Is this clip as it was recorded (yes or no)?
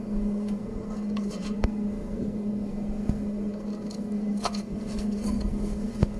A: no